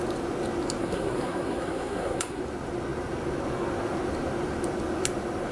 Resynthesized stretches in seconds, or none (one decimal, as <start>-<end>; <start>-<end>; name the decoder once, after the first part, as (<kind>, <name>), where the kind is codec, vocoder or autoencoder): 0.8-2.4 (codec, SNAC)